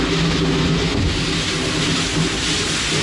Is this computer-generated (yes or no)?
no